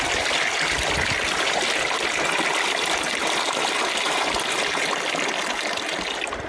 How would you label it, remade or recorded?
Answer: recorded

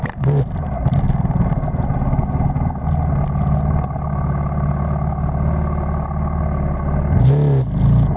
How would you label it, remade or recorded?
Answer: recorded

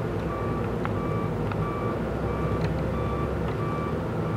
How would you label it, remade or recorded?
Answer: recorded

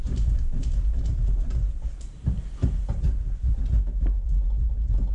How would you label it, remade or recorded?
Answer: remade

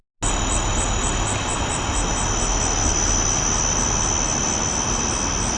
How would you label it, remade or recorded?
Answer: recorded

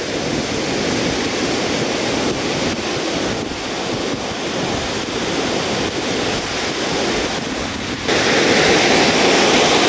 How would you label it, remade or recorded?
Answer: recorded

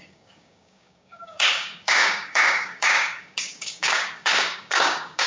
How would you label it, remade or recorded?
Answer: remade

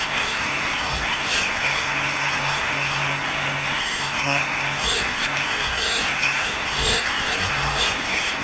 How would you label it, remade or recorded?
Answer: remade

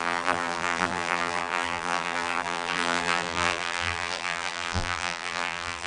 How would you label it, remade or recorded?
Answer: remade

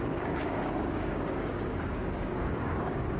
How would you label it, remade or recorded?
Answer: remade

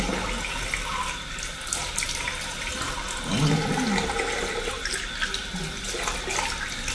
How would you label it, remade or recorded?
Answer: recorded